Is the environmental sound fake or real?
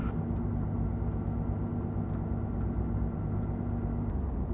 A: real